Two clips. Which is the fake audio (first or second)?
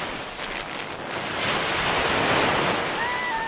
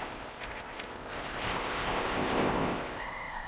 second